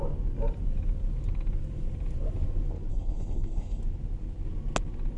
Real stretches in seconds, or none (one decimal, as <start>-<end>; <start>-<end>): 0.0-2.9; 3.8-5.2